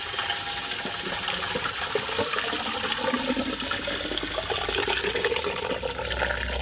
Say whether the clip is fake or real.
real